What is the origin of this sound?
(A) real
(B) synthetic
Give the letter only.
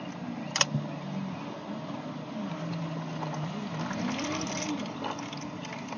A